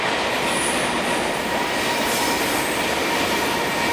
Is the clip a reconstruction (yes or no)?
no